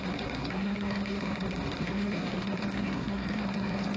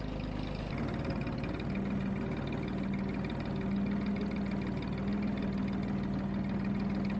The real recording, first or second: second